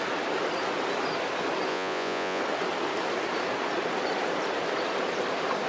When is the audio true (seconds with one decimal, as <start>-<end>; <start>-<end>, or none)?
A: 0.0-1.7; 2.4-5.7